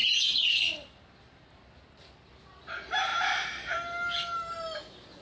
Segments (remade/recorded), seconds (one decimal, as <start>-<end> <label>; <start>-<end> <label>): 0.0-3.1 recorded; 3.1-3.7 remade; 3.7-5.2 recorded